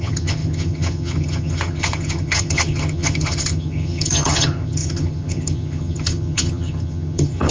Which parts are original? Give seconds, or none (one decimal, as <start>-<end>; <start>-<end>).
none